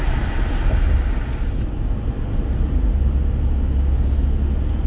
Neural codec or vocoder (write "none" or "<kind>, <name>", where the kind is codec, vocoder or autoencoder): none